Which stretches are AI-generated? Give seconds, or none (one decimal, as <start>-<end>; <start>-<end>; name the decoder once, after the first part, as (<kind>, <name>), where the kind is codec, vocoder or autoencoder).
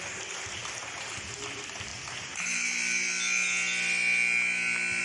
none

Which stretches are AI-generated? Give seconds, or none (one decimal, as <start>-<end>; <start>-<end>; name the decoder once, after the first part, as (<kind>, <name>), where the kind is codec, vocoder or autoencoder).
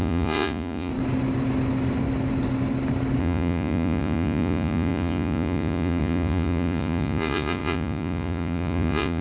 0.0-0.9 (vocoder, Vocos); 3.2-9.2